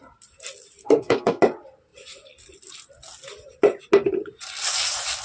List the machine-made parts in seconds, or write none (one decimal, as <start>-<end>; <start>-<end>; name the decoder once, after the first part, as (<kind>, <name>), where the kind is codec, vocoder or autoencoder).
0.8-1.4 (codec, SNAC)